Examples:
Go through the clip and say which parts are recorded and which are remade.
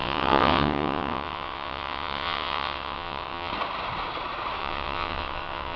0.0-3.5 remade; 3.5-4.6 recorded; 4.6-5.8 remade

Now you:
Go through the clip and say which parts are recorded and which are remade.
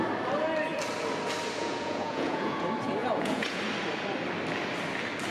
0.0-1.6 recorded; 1.6-2.6 remade; 2.6-3.0 recorded; 3.0-3.6 remade; 3.6-5.3 recorded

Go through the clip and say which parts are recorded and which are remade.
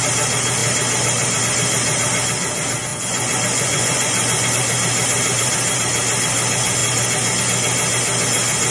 0.0-2.9 recorded; 2.9-4.5 remade; 4.5-8.7 recorded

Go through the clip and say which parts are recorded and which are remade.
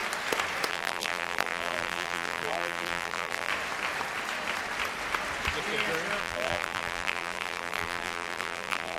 0.0-0.7 recorded; 0.7-3.5 remade; 3.5-6.2 recorded; 6.2-9.0 remade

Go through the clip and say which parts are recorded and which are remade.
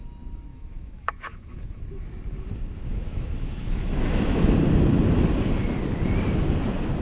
0.0-0.5 recorded; 0.5-1.8 remade; 1.8-2.9 recorded; 2.9-4.5 remade; 4.5-7.0 recorded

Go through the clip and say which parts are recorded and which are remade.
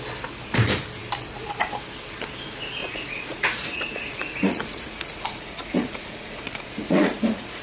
0.0-2.8 recorded; 2.8-7.6 remade